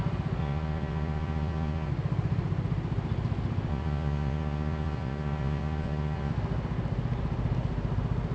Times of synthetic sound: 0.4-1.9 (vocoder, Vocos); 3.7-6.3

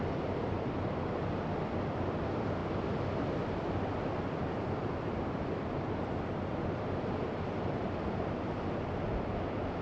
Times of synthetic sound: none

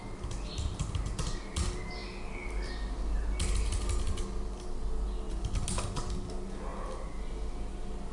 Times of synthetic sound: none

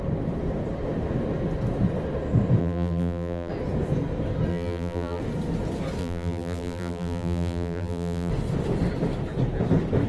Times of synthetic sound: 2.6-3.5 (vocoder, BigVGAN v2); 4.5-5.2; 6.0-8.3

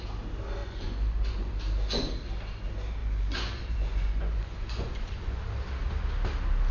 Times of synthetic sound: 0.6-1.5 (vocoder, Vocos); 3.0-5.4